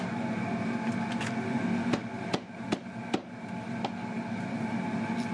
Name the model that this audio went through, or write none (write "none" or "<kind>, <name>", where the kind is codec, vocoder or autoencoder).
none